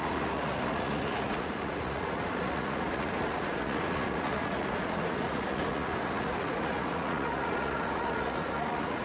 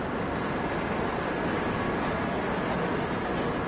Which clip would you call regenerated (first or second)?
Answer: first